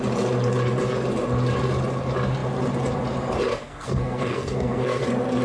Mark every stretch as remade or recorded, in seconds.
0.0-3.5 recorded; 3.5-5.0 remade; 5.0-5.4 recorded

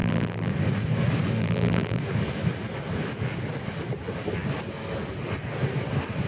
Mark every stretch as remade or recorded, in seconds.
0.0-0.5 remade; 0.5-1.4 recorded; 1.4-2.0 remade; 2.0-6.3 recorded